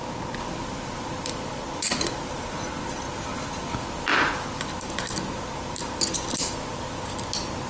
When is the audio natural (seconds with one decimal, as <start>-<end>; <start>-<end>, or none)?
0.0-7.7